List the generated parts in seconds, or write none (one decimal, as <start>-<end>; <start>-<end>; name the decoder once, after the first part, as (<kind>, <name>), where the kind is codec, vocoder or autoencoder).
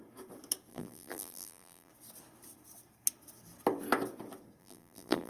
0.7-1.9 (vocoder, BigVGAN v2); 4.6-5.3